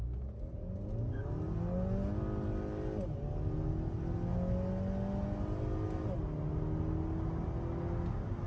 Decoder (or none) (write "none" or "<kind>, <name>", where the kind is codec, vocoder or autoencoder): none